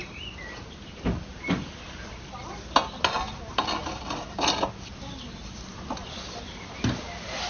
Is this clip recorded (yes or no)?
yes